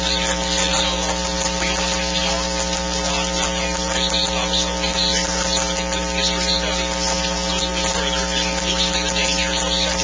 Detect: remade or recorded recorded